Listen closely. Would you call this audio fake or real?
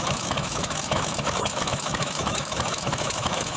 fake